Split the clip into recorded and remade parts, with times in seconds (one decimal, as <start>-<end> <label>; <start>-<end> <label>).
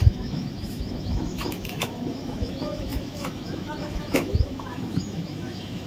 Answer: 0.0-5.9 remade